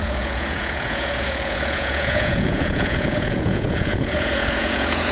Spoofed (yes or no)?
yes